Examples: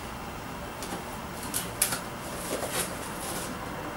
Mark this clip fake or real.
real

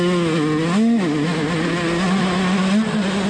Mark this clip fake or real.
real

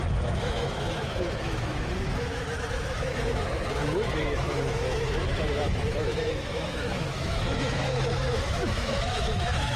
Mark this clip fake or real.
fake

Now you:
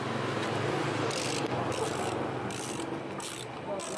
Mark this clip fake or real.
real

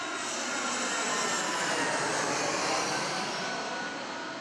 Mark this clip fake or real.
real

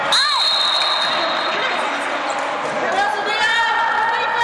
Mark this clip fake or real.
real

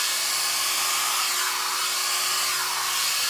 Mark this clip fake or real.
real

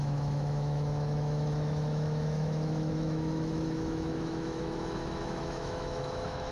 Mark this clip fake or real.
fake